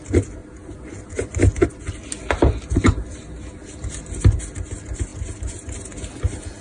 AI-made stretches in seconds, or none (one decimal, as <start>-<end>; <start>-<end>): none